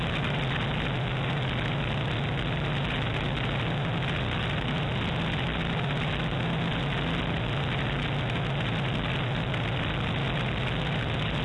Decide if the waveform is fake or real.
real